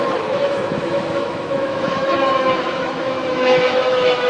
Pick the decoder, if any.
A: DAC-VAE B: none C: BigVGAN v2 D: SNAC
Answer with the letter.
A